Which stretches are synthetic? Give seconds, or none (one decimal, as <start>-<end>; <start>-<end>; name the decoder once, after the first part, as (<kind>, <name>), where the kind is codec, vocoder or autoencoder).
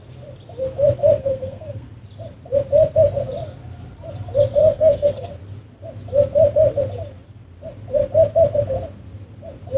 1.2-1.9 (codec, SNAC); 4.6-5.3